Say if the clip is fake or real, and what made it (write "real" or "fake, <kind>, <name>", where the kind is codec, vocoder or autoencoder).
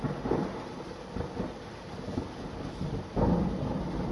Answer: real